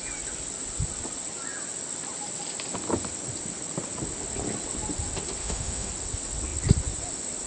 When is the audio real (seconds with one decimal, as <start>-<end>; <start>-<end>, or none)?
0.0-5.4; 5.9-7.5